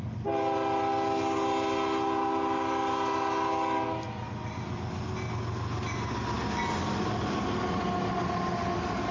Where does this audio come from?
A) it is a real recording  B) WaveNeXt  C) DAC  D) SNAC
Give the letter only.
A